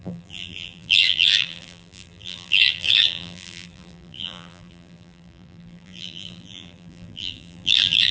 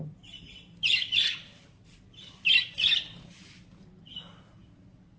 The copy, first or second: first